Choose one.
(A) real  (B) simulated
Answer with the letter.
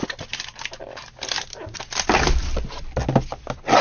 A